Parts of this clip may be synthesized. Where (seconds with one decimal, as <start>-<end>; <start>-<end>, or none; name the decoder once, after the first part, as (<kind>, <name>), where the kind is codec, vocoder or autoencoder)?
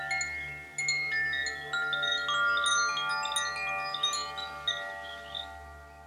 none